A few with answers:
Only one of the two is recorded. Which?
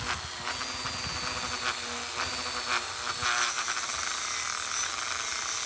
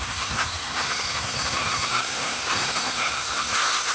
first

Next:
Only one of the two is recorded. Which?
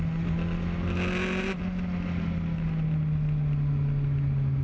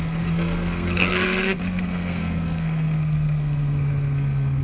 first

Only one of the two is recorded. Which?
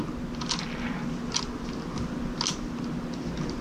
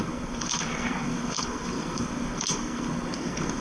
first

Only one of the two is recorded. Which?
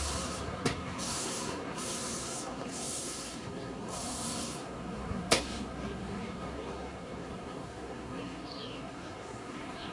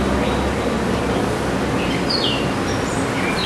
second